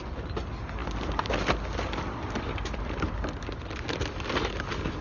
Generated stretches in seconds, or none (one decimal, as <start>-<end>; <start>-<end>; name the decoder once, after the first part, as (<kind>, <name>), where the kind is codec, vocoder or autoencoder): 0.8-3.5 (vocoder, BigVGAN v2)